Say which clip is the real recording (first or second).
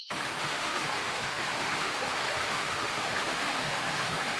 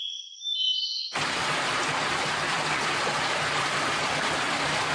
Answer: second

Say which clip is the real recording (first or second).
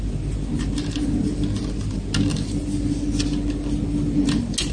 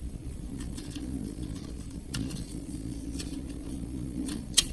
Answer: first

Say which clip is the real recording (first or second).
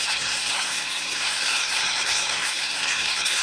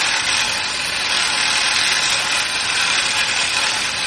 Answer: second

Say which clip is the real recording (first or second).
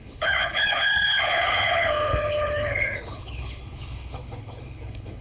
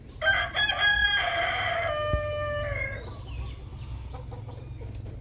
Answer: second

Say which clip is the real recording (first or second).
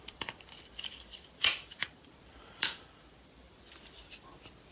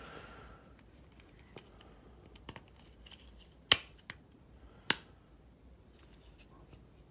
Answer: second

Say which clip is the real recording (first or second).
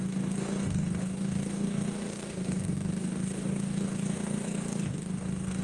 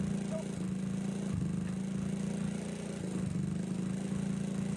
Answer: second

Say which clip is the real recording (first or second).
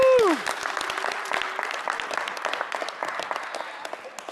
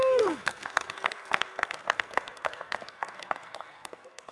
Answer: first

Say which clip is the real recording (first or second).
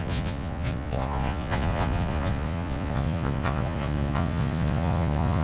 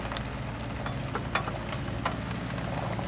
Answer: second